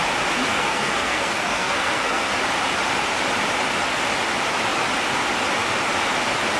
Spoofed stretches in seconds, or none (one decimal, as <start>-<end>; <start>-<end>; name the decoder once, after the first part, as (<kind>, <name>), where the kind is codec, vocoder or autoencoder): 0.5-2.3 (codec, SNAC)